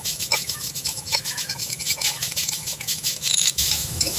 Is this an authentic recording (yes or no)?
no